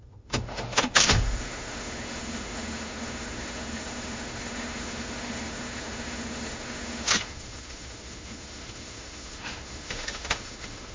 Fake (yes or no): yes